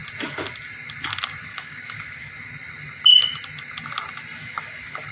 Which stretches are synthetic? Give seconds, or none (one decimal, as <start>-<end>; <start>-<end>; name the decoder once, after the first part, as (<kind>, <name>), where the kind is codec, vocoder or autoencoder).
1.5-2.3 (codec, DAC); 4.4-5.1